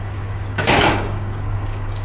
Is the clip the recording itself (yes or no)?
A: no